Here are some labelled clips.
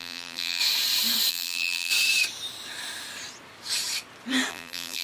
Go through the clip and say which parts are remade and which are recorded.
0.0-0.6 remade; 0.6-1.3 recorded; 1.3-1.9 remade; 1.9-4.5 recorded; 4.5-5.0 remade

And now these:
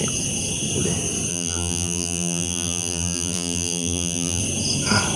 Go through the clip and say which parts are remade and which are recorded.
0.0-1.3 recorded; 1.3-4.4 remade; 4.4-5.2 recorded

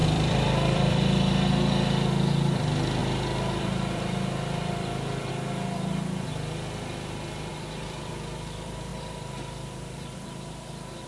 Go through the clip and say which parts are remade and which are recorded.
0.0-1.5 remade; 1.5-3.0 recorded; 3.0-5.3 remade; 5.3-7.5 recorded; 7.5-8.1 remade; 8.1-8.9 recorded; 8.9-11.1 remade

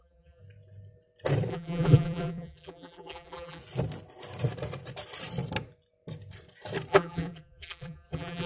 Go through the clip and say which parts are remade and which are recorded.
0.0-0.4 remade; 0.4-1.5 recorded; 1.5-3.6 remade; 3.6-6.9 recorded; 6.9-8.5 remade

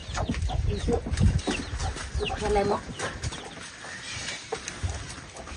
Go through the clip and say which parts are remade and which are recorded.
0.0-5.6 recorded